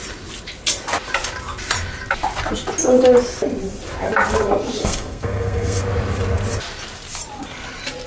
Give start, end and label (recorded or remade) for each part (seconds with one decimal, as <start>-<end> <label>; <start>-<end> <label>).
0.0-4.8 recorded; 4.8-5.8 remade; 5.8-8.1 recorded